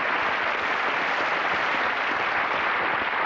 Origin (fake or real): real